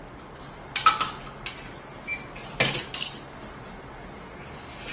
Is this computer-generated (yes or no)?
no